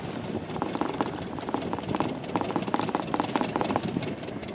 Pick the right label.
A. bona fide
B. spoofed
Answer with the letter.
A